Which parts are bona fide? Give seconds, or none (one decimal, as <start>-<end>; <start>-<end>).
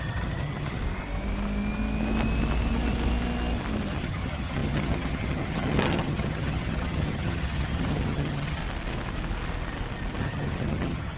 0.8-3.9; 8.6-10.2